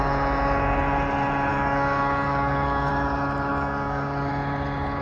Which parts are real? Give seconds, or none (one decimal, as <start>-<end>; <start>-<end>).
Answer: 0.0-1.5; 2.9-3.5; 4.3-5.0